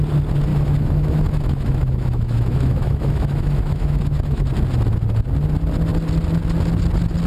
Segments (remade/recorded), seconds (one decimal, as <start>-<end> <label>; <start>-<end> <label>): 0.0-0.5 recorded; 0.5-4.4 remade; 4.4-7.3 recorded